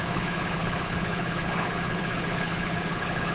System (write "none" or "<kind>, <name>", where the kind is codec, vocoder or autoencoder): codec, HILCodec